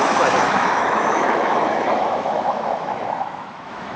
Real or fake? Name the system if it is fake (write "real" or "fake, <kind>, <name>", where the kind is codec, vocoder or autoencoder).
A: fake, autoencoder, DAC-VAE